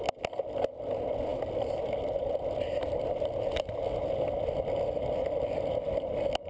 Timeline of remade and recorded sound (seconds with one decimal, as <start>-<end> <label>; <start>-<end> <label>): 0.0-6.5 recorded